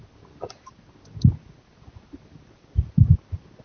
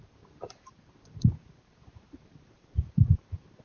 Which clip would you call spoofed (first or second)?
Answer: second